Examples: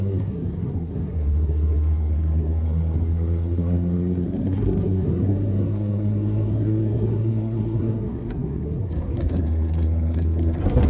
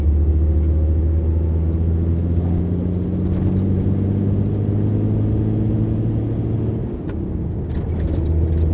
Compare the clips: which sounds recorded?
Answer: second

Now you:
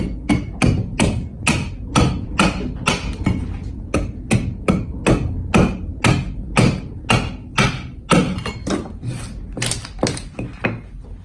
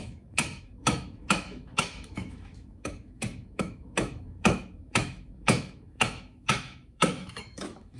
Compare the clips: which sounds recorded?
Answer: first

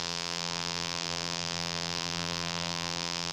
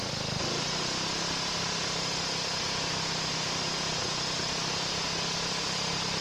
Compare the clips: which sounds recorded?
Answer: second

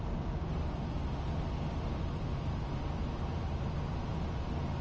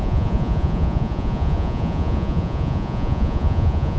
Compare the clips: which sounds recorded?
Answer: first